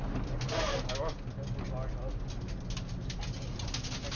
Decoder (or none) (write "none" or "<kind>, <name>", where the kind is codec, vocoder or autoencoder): none